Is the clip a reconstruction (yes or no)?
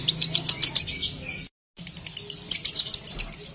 no